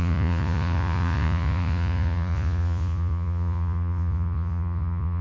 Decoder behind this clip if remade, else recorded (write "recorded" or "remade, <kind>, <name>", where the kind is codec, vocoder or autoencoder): remade, vocoder, Vocos